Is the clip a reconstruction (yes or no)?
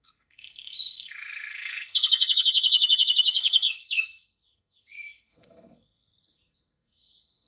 yes